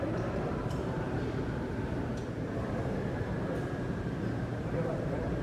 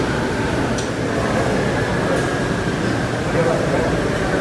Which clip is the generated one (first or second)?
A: first